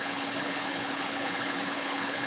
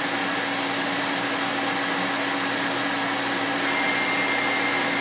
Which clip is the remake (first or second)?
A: first